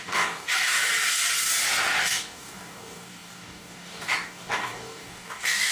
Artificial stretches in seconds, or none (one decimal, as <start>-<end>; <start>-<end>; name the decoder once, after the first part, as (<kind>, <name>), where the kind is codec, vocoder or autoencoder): 0.0-0.8 (codec, DAC); 2.0-5.7